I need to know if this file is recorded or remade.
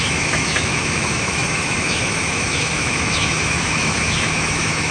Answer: remade